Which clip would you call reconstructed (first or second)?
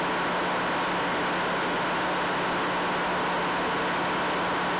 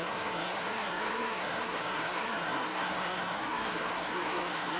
second